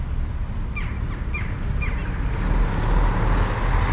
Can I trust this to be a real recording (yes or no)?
yes